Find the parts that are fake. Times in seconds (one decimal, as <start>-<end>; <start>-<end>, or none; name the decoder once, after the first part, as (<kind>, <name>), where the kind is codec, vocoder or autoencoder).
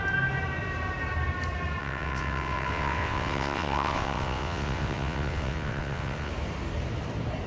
1.8-6.3 (vocoder, WaveNeXt)